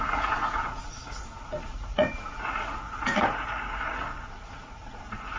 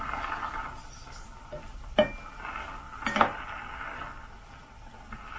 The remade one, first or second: first